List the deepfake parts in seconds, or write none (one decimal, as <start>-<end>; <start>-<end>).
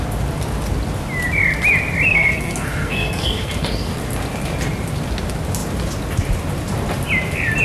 2.1-3.9